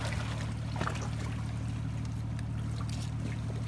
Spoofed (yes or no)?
no